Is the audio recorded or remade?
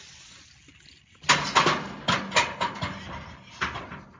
recorded